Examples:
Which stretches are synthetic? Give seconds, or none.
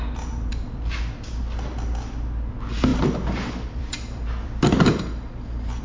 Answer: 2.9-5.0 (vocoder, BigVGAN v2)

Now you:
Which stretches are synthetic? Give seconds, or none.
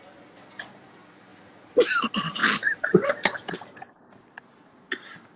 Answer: 2.4-3.1 (vocoder, BigVGAN v2)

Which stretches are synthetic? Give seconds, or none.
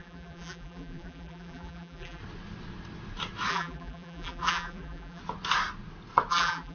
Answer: 0.0-2.2 (vocoder, BigVGAN v2); 3.5-5.2; 6.3-6.7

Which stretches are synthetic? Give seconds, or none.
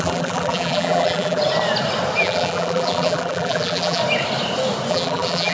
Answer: 0.0-1.4 (vocoder, BigVGAN v2); 2.2-4.0; 4.9-5.5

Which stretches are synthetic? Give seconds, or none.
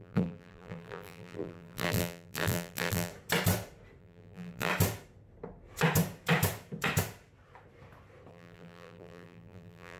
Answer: 0.0-3.1 (vocoder, BigVGAN v2); 4.0-4.7; 8.3-10.0